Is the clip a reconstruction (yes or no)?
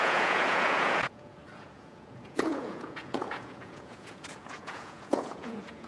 yes